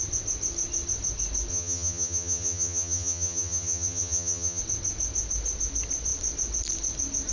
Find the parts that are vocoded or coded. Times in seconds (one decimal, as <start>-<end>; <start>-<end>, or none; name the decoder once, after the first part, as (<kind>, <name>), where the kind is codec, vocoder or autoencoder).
1.5-4.6 (vocoder, HiFi-GAN)